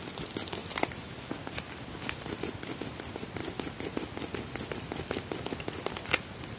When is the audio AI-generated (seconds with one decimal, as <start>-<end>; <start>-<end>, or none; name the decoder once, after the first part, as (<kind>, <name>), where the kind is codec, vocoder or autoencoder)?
none

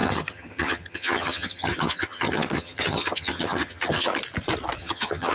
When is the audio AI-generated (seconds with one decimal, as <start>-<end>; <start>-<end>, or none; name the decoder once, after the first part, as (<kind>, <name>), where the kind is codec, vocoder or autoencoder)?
0.0-4.1 (vocoder, HiFi-GAN); 4.8-5.3

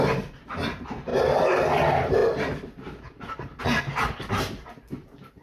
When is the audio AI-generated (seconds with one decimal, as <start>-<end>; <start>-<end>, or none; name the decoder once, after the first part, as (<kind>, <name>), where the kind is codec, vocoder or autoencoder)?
none

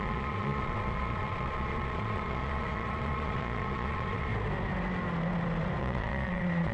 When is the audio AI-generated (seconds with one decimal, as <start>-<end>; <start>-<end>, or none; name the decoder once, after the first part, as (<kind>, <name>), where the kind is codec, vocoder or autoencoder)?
0.0-4.3 (vocoder, Vocos); 5.8-6.7